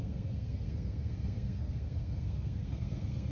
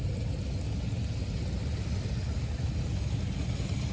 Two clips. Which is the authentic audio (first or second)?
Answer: second